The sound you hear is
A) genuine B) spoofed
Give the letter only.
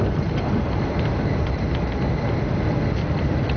B